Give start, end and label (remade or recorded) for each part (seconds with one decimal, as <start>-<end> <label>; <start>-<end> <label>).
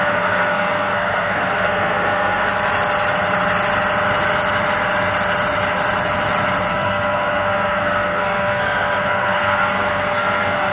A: 0.0-2.5 remade; 2.5-6.7 recorded; 6.7-10.7 remade